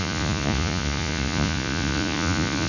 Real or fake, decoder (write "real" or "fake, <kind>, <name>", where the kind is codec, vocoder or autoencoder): fake, vocoder, Vocos